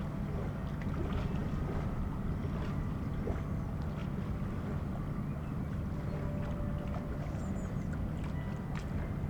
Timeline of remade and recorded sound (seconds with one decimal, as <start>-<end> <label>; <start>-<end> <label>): 0.0-9.3 recorded